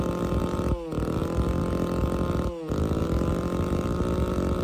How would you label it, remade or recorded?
recorded